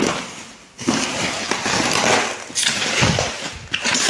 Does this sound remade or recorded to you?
recorded